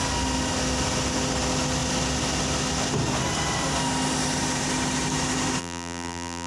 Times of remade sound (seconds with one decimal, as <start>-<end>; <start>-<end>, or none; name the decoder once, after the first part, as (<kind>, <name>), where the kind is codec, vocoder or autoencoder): 5.6-6.5 (vocoder, BigVGAN v2)